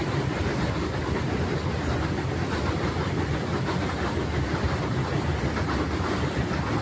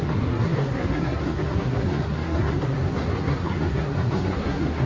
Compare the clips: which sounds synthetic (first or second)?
second